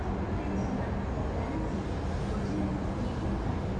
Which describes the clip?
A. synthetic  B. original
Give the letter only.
B